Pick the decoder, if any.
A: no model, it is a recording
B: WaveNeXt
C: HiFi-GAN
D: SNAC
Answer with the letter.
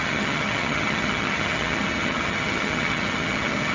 C